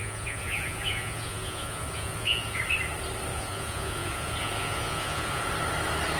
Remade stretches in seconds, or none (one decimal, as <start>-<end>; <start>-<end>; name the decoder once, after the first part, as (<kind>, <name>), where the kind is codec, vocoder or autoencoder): 0.0-2.6 (vocoder, Vocos); 3.3-5.4